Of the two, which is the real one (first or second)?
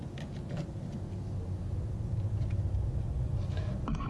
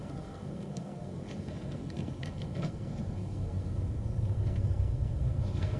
first